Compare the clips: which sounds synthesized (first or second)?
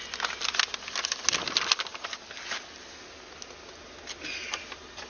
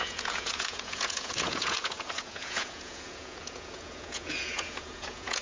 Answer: second